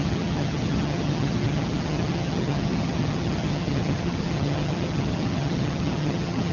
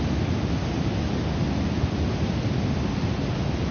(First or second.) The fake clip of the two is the first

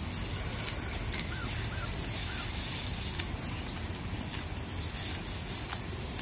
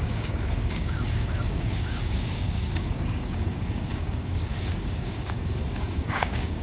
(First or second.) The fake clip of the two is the second